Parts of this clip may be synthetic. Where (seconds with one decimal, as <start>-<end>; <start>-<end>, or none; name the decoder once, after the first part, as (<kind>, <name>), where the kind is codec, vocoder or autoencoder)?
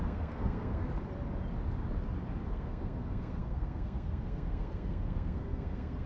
0.0-0.8 (codec, SNAC); 2.5-6.1